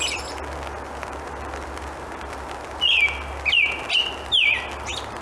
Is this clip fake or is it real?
real